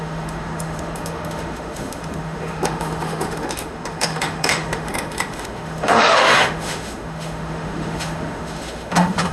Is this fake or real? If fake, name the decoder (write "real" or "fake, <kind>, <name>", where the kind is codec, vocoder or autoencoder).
fake, autoencoder, DAC-VAE